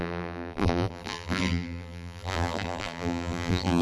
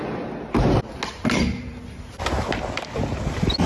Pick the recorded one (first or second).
second